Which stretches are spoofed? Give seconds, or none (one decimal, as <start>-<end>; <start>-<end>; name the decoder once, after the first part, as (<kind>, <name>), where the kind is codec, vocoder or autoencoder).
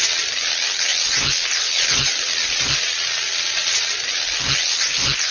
none